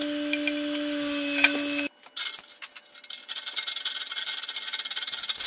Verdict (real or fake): real